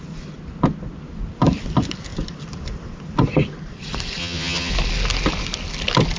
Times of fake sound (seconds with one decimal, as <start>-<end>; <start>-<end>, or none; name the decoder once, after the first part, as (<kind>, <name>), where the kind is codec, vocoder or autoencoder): 4.2-4.7 (vocoder, HiFi-GAN)